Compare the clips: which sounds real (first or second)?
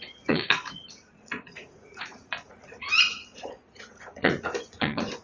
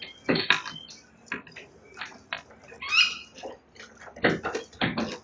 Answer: second